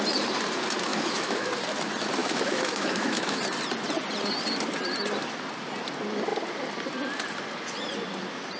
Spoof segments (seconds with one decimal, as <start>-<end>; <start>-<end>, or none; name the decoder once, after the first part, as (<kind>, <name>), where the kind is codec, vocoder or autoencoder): 0.9-1.5 (autoencoder, DAC-VAE); 2.2-3.4